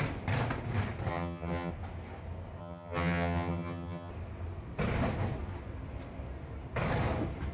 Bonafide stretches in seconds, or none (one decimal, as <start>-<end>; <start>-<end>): 0.0-1.1; 1.7-2.6; 4.1-7.5